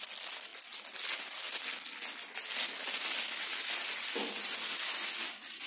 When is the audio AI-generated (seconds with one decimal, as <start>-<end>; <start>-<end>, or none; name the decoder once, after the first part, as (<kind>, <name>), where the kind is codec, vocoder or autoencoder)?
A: none